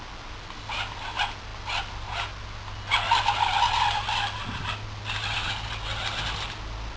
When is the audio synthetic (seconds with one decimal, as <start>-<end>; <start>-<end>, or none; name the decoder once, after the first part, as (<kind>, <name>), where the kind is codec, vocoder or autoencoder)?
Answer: none